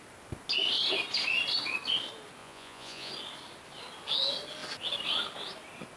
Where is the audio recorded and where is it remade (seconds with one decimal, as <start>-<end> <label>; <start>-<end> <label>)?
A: 0.0-2.4 recorded; 2.4-3.1 remade; 3.1-6.0 recorded